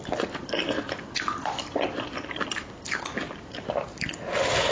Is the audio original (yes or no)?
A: yes